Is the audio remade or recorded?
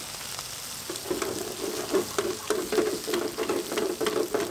recorded